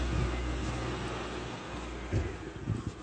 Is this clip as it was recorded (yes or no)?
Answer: yes